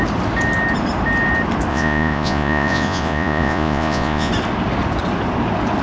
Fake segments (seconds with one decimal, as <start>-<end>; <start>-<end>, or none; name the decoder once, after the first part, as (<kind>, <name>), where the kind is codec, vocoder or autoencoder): 1.7-4.3 (vocoder, Vocos)